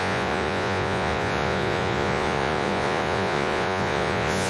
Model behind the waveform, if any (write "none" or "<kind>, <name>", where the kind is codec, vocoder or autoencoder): vocoder, Vocos